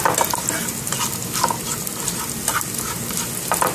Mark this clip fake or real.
real